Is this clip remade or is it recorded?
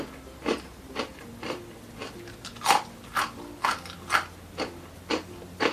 remade